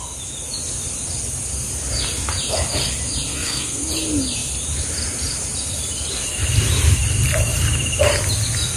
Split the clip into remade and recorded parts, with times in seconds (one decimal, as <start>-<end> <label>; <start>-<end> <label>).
0.0-3.3 recorded; 3.3-3.9 remade; 3.9-8.8 recorded